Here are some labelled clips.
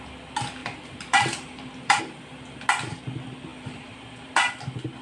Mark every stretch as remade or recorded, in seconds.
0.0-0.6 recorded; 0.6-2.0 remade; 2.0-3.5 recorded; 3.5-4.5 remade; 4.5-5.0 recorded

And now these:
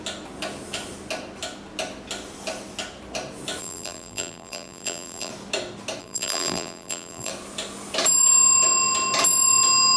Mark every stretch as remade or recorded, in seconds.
0.0-3.6 recorded; 3.6-5.3 remade; 5.3-6.0 recorded; 6.0-7.3 remade; 7.3-10.0 recorded

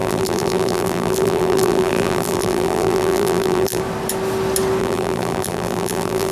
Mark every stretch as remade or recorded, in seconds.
0.0-3.8 remade; 3.8-4.8 recorded; 4.8-6.3 remade

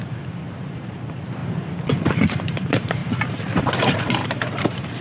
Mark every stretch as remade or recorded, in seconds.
0.0-1.4 remade; 1.4-2.0 recorded; 2.0-5.0 remade

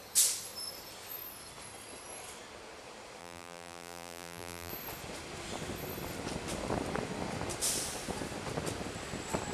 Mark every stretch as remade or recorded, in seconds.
0.0-3.2 recorded; 3.2-4.7 remade; 4.7-9.5 recorded